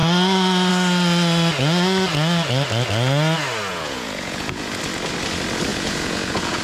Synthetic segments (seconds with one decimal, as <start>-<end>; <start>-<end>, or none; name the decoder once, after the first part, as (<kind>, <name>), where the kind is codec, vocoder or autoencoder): 3.7-4.8 (vocoder, Vocos); 5.7-6.6